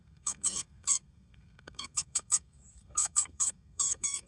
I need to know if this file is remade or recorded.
remade